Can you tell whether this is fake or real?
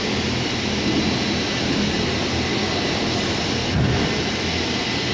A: real